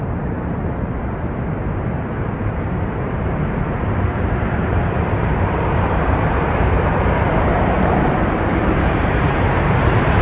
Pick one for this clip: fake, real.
fake